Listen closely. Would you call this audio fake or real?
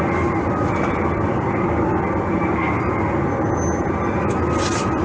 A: real